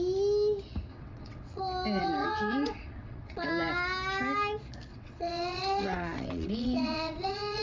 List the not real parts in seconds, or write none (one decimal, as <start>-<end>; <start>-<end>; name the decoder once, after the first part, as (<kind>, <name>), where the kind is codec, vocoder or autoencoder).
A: 0.9-1.6 (vocoder, WaveNeXt); 2.0-3.5; 4.9-7.6

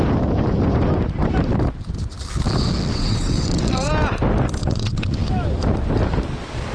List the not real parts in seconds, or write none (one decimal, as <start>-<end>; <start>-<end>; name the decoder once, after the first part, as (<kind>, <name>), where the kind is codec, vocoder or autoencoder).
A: 2.9-3.9 (vocoder, WaveNeXt); 4.6-5.3